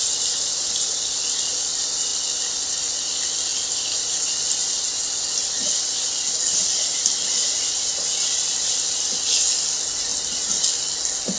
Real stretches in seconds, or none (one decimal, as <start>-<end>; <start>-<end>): 0.0-11.4